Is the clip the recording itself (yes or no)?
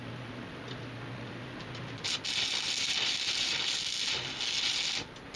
yes